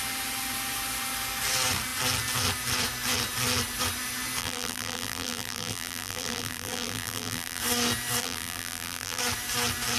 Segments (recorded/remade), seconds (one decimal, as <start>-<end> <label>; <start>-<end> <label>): 0.0-4.4 recorded; 4.4-7.6 remade; 7.6-8.2 recorded; 8.2-9.2 remade; 9.2-10.0 recorded